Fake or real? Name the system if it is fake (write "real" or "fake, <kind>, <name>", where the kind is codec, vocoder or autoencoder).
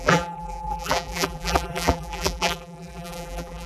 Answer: fake, vocoder, BigVGAN v2